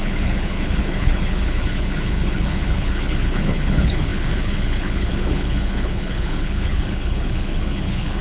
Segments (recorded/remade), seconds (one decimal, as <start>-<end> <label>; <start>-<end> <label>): 0.0-8.2 remade